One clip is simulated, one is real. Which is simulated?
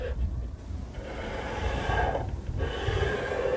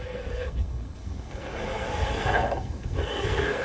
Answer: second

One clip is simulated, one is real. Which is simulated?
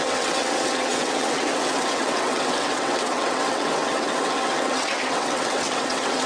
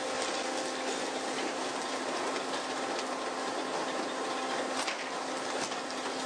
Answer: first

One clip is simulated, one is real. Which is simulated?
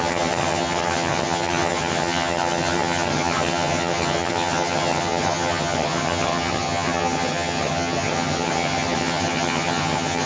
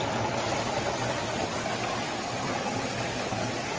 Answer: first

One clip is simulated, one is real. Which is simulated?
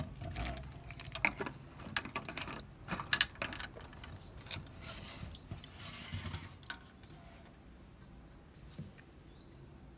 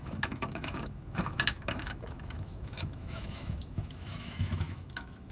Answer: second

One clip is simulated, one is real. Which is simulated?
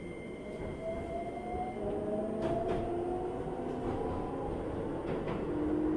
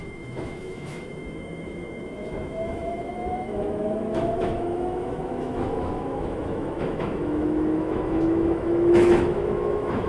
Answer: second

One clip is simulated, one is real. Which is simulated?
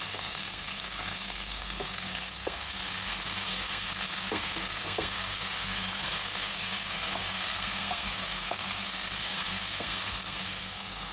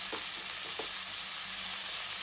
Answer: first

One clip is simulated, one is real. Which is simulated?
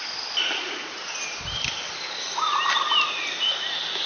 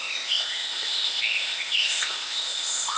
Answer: second